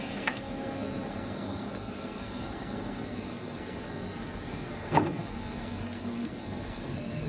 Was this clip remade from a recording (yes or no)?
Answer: yes